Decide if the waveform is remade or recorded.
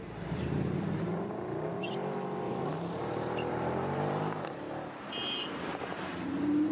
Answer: remade